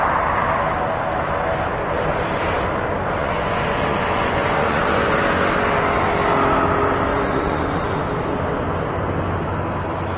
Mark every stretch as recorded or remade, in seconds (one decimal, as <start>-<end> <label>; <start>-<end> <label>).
0.0-3.0 recorded; 3.0-5.2 remade; 5.2-7.1 recorded; 7.1-8.0 remade; 8.0-10.2 recorded